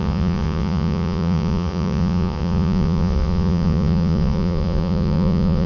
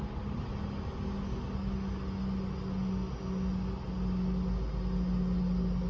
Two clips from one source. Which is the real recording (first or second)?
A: second